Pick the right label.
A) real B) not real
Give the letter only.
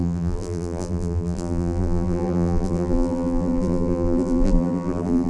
B